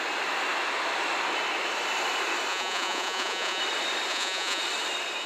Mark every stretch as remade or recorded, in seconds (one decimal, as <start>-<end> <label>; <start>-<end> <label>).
0.0-2.5 recorded; 2.5-3.6 remade; 3.6-4.1 recorded; 4.1-4.6 remade; 4.6-5.3 recorded